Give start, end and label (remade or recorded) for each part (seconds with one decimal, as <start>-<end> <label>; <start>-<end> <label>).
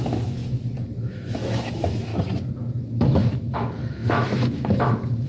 0.0-0.4 remade; 0.4-1.1 recorded; 1.1-2.1 remade; 2.1-3.1 recorded; 3.1-5.3 remade